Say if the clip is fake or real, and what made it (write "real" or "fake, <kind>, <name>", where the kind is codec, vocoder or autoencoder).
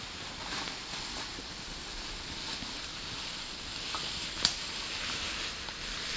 real